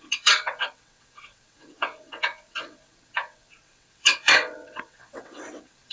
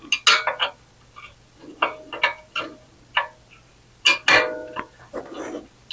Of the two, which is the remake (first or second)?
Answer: first